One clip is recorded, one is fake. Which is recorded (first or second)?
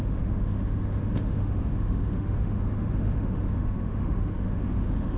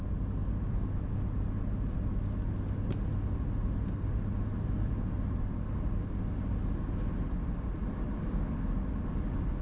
second